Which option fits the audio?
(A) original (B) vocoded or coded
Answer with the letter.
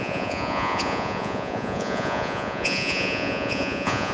B